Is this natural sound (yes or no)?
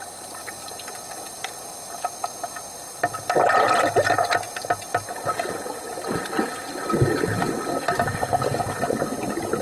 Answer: yes